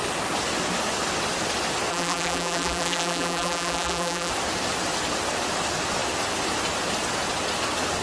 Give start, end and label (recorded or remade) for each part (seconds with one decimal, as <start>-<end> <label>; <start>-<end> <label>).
0.0-1.9 recorded; 1.9-4.3 remade; 4.3-8.0 recorded